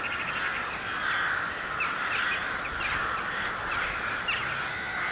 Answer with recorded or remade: recorded